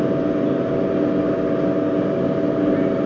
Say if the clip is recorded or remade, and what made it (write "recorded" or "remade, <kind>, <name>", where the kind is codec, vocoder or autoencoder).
recorded